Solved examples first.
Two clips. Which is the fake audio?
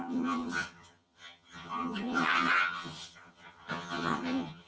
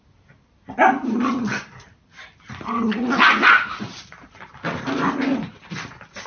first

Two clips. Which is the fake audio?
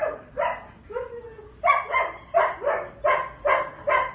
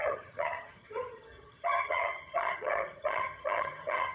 second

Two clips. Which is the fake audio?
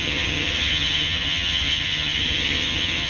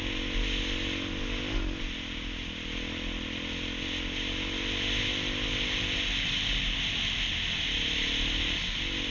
first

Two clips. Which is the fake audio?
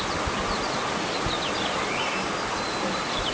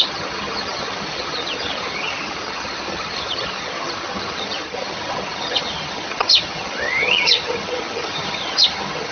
second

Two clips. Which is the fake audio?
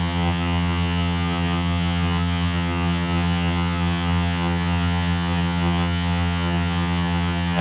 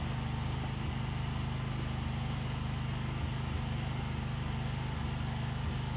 first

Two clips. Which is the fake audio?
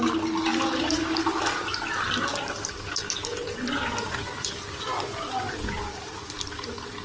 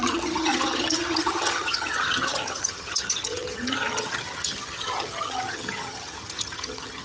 second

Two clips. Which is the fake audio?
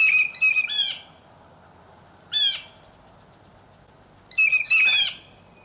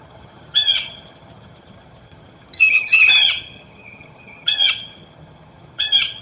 second